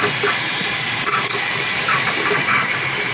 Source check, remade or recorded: recorded